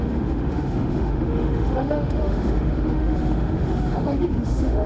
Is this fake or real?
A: fake